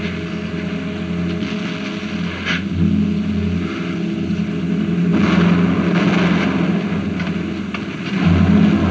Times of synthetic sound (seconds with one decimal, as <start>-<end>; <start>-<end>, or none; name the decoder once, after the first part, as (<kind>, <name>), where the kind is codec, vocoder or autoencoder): none